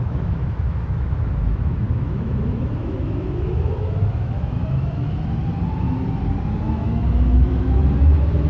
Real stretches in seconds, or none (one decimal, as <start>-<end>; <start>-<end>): 5.4-6.6